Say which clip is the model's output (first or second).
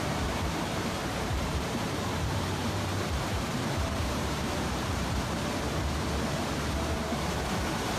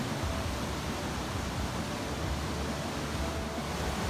first